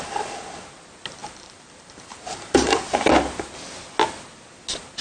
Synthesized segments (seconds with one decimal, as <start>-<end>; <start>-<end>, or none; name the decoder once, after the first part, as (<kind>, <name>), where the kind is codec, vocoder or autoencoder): 1.2-3.0 (vocoder, BigVGAN v2)

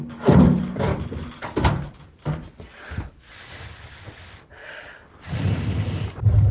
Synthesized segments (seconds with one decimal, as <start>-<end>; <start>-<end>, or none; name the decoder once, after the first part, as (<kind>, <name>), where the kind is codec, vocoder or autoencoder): 0.0-2.4 (vocoder, BigVGAN v2); 3.2-4.6; 6.0-6.5

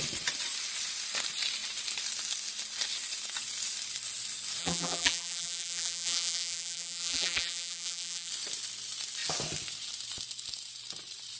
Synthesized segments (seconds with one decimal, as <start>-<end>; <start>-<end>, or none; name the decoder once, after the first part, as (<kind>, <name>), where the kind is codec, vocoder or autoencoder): 4.6-8.3 (vocoder, BigVGAN v2)

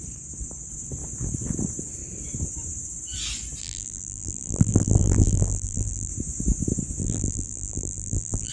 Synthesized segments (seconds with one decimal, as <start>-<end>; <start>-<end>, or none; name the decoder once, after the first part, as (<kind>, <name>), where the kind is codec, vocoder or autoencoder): 3.6-6.1 (vocoder, BigVGAN v2); 7.0-8.5

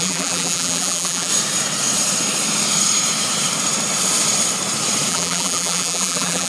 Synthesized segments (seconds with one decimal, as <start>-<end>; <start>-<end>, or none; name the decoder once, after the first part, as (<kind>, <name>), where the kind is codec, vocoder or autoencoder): 0.0-1.3 (vocoder, BigVGAN v2); 5.1-6.5

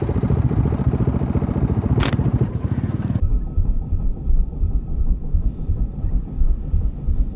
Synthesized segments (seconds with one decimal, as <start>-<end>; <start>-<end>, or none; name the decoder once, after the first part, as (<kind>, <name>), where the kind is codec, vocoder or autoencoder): 2.3-3.2 (vocoder, BigVGAN v2)

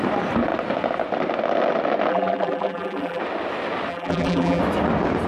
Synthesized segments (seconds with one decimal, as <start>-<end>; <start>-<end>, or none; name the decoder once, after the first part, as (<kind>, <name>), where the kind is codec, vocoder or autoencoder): 2.1-3.2 (vocoder, BigVGAN v2); 3.9-4.6

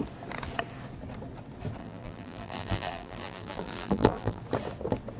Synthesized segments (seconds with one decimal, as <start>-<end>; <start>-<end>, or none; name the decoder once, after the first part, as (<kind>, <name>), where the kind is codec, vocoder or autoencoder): 1.8-4.4 (vocoder, BigVGAN v2)